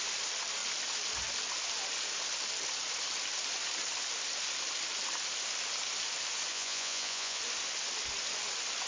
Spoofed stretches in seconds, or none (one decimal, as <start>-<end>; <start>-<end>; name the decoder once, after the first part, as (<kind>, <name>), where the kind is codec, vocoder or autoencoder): 6.5-7.4 (vocoder, Vocos)